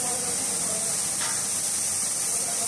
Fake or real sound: real